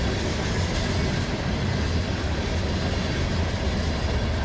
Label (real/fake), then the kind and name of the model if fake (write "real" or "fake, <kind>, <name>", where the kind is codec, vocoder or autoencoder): real